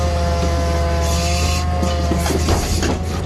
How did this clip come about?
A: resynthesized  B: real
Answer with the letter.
B